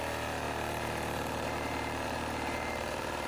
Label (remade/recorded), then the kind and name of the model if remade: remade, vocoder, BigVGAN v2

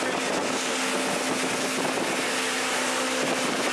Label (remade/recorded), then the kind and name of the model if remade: recorded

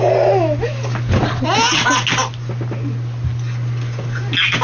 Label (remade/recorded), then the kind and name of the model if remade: recorded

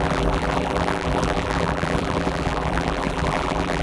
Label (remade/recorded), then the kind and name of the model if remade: remade, vocoder, BigVGAN v2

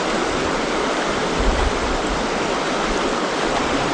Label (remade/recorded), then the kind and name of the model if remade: recorded